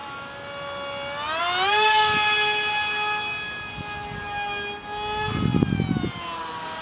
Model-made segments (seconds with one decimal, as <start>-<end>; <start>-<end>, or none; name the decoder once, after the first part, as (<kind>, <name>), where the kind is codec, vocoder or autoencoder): none